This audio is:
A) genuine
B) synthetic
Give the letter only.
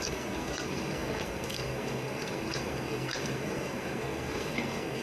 B